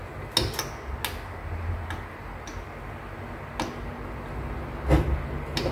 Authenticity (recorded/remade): recorded